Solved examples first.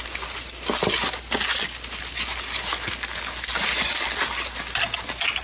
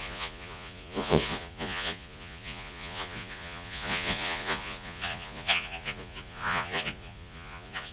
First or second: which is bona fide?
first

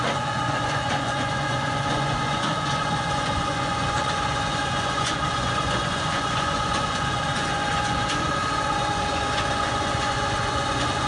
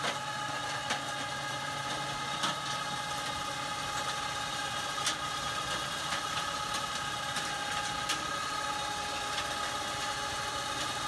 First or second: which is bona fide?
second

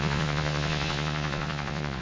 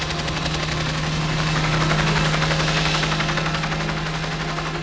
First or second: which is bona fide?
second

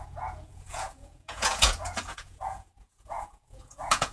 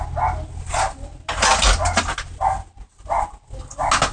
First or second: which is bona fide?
second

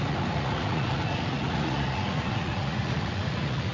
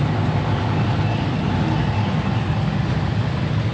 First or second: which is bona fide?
second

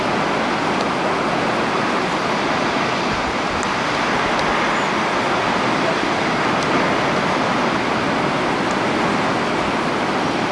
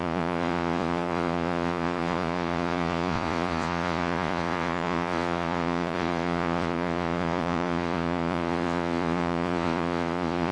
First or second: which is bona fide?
first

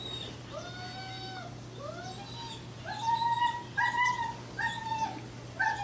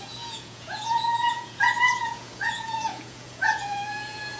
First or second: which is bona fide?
first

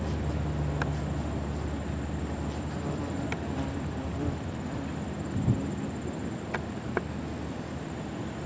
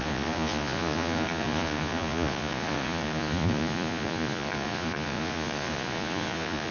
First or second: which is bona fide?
first